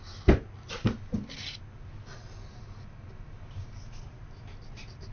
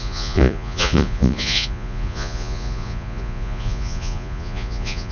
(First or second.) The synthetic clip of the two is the second